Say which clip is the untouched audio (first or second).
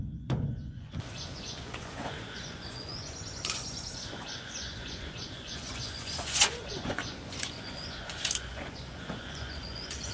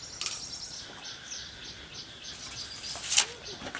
second